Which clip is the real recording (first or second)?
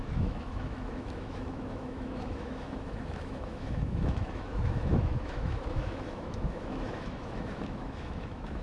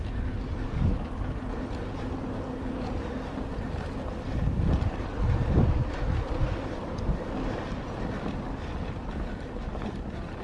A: second